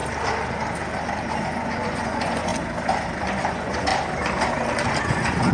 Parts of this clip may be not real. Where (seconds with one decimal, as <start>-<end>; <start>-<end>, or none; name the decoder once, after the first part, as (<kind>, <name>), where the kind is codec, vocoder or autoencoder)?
1.3-2.5 (vocoder, Vocos); 3.5-3.9; 5.0-5.5